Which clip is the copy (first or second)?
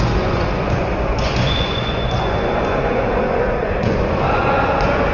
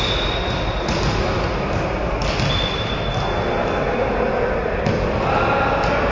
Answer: first